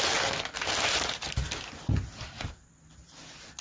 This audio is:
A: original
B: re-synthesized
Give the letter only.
A